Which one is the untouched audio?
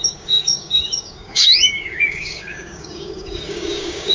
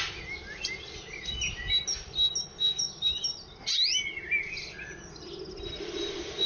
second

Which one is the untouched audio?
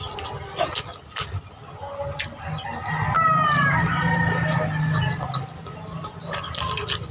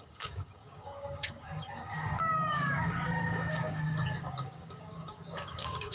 first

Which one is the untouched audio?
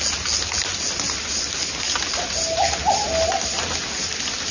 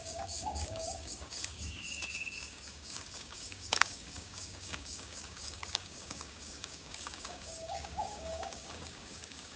first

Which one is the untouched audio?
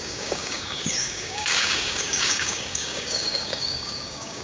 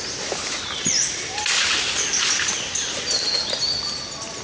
second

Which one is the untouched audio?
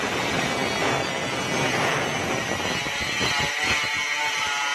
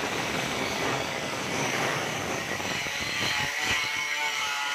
first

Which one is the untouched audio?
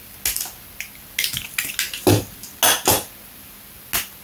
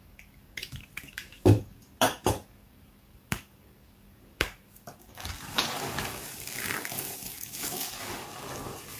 first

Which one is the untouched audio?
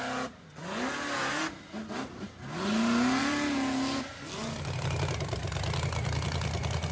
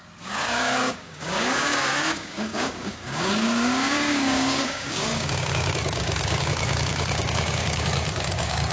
first